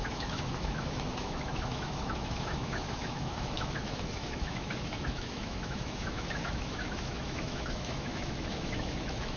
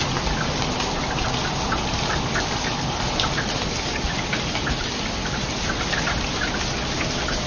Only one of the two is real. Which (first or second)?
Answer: second